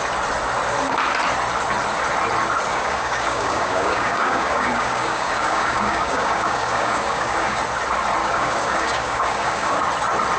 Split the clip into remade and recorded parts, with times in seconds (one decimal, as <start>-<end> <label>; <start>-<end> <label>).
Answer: 0.0-2.7 recorded; 2.7-7.6 remade; 7.6-8.2 recorded; 8.2-9.8 remade; 9.8-10.4 recorded